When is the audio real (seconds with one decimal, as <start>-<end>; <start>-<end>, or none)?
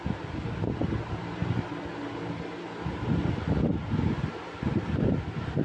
0.0-5.6